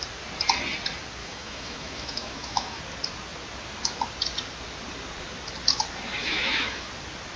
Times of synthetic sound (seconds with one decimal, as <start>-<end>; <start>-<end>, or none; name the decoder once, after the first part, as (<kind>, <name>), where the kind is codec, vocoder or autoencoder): 1.2-2.8 (autoencoder, DAC-VAE); 6.2-6.9